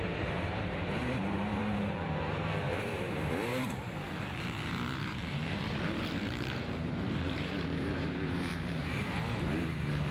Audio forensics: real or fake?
fake